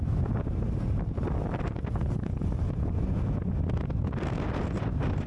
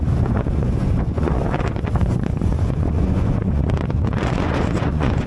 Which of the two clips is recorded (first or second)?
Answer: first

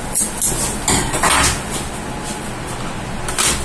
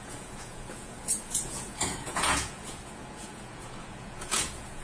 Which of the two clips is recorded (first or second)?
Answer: first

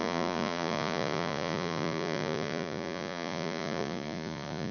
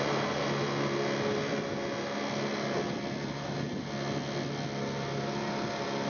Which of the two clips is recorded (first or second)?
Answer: second